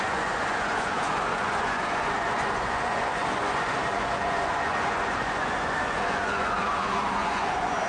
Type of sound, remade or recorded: remade